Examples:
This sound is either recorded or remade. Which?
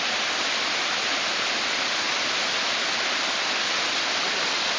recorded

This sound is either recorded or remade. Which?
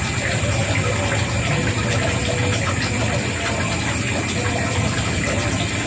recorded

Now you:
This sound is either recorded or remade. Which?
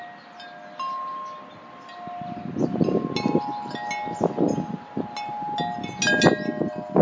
recorded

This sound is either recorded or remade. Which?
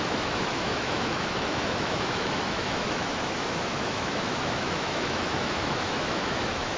remade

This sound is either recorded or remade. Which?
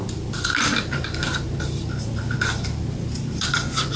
recorded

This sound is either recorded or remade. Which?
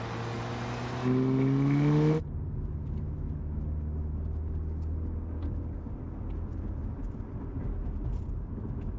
recorded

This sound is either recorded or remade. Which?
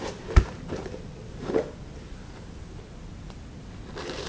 recorded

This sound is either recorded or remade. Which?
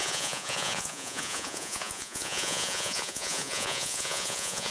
remade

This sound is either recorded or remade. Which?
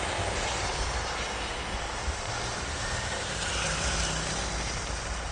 recorded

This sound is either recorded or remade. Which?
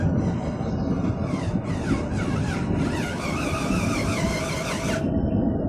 remade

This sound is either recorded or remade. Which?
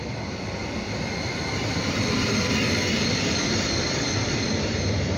recorded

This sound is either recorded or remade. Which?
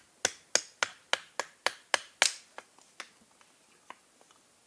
recorded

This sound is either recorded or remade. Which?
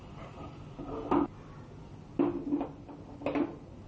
recorded